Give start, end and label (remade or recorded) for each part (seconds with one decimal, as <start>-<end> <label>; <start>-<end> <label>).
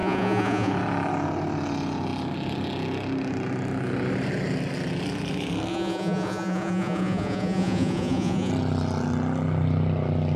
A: 0.0-0.7 remade; 0.7-5.7 recorded; 5.7-8.5 remade; 8.5-10.4 recorded